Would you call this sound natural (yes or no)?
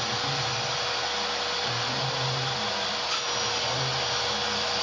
yes